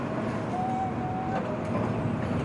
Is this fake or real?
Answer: real